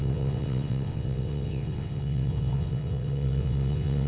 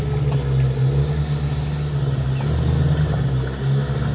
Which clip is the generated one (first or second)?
first